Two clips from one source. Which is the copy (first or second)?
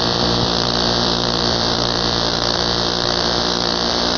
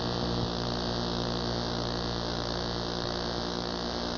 first